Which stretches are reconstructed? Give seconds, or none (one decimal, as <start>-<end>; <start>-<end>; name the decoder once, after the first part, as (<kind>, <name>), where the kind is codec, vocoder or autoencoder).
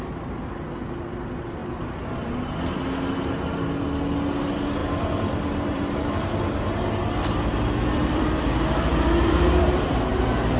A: 1.6-2.3 (vocoder, BigVGAN v2); 4.8-6.1; 7.0-10.2